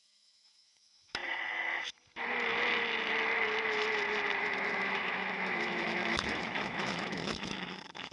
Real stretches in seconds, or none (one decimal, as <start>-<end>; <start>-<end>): 1.2-4.4